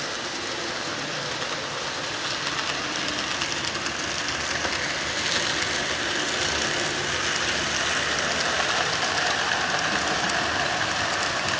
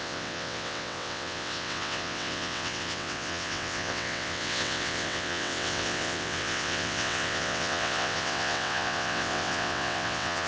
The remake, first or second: second